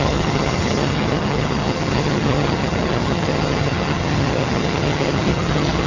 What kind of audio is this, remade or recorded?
remade